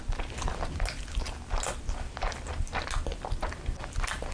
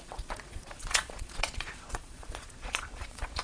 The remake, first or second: second